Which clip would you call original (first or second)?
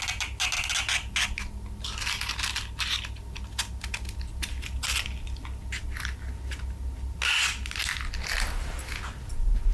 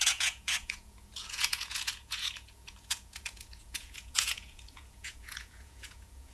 first